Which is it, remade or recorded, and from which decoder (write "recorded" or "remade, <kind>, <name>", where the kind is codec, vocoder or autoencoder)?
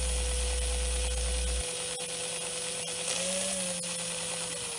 recorded